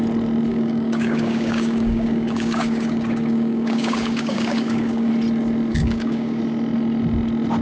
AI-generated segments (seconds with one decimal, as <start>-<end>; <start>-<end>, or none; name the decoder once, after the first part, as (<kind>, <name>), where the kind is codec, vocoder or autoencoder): 0.5-5.1 (codec, DAC); 5.7-6.4